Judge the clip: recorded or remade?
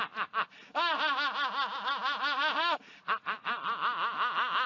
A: recorded